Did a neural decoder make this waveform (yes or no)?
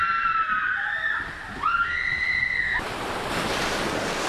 no